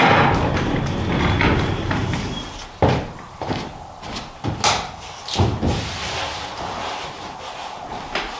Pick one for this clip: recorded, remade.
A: recorded